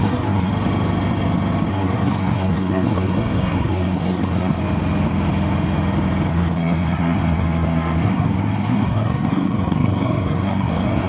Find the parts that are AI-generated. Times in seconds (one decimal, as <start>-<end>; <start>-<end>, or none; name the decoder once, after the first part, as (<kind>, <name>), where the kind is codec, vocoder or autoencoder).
0.0-0.5 (codec, SNAC); 1.7-4.6; 6.3-11.1